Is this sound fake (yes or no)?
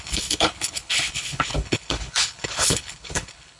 yes